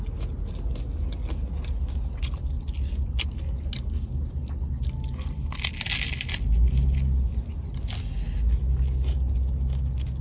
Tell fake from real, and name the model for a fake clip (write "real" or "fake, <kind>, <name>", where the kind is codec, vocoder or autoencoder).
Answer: real